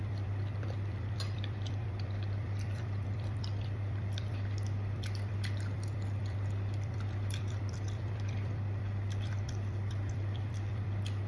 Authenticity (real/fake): fake